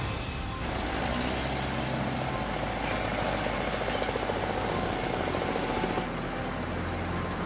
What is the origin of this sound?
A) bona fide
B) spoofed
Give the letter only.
A